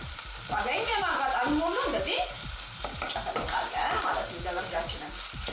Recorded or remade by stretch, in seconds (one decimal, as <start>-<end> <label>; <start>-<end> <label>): 0.0-5.5 remade